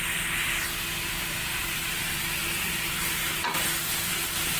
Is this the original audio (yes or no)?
yes